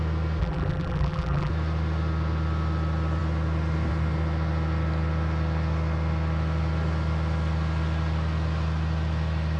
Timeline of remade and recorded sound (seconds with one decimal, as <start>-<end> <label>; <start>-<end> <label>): 0.0-0.4 recorded; 0.4-1.5 remade; 1.5-9.6 recorded